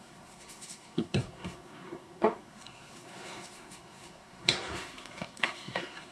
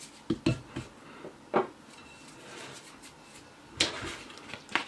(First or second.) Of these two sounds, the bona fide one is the second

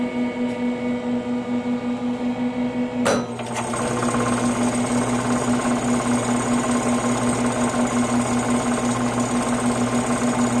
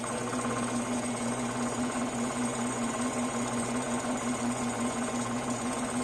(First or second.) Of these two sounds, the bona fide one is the first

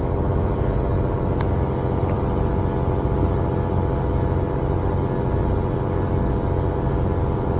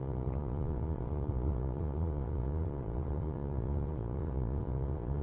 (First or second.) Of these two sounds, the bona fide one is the first